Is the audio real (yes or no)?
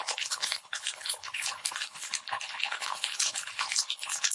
no